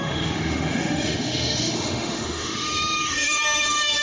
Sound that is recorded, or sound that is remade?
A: remade